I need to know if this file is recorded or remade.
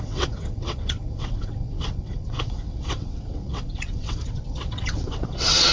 remade